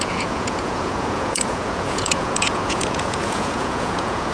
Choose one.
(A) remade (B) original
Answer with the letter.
A